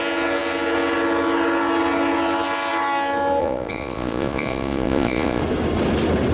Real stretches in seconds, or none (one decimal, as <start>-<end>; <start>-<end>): 0.0-3.4; 5.4-6.3